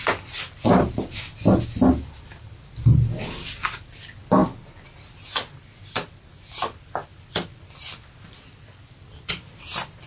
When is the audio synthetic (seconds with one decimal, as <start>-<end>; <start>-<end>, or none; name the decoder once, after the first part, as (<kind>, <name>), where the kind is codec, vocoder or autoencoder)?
none